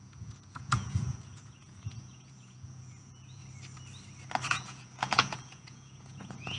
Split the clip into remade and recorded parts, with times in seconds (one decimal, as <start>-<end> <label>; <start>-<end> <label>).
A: 0.0-3.4 remade; 3.4-4.5 recorded; 4.5-6.6 remade